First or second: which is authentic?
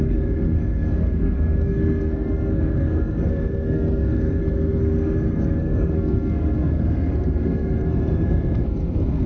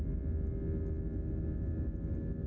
second